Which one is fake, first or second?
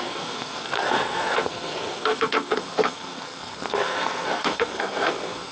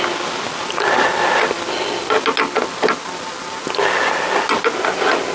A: first